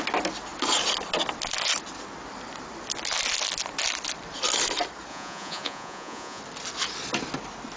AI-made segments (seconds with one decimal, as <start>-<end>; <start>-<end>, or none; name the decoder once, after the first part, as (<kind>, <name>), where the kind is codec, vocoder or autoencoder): 5.1-6.4 (vocoder, Vocos)